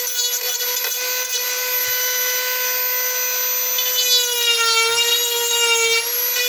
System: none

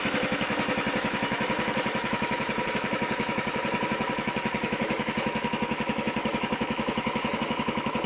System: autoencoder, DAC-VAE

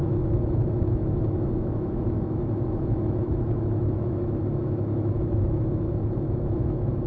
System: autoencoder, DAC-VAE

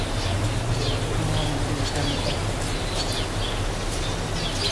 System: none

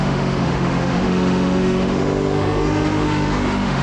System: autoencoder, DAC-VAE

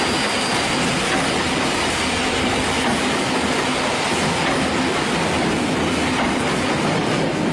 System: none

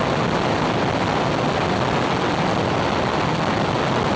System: none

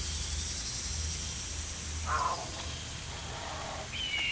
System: none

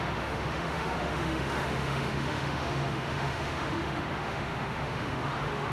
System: autoencoder, DAC-VAE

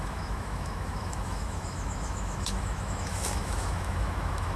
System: autoencoder, DAC-VAE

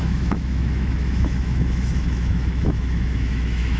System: autoencoder, DAC-VAE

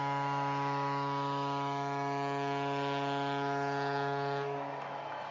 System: autoencoder, DAC-VAE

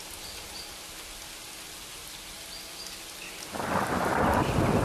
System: none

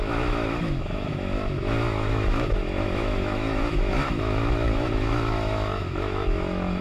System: autoencoder, DAC-VAE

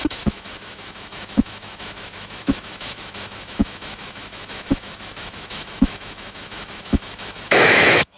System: autoencoder, DAC-VAE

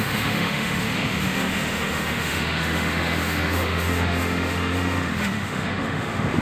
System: autoencoder, DAC-VAE